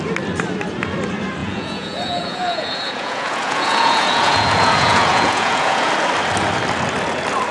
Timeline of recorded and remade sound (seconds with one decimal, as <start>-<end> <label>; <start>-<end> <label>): 0.0-1.4 recorded; 1.4-5.9 remade; 5.9-7.5 recorded